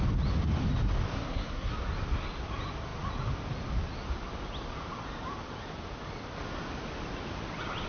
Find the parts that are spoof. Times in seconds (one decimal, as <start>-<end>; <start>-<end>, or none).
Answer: 1.1-1.7